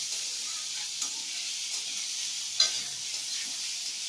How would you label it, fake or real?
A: real